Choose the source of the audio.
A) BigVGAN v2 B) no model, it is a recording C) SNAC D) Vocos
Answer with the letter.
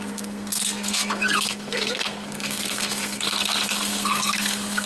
C